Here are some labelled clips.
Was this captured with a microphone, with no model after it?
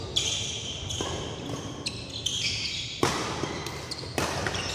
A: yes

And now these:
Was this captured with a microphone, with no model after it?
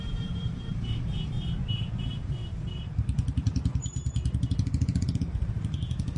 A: no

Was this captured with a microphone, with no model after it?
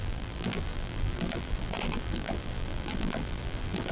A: no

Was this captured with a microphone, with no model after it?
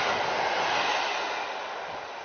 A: yes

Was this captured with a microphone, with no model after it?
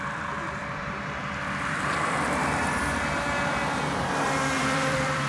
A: no